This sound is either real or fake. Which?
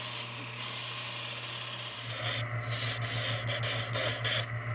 real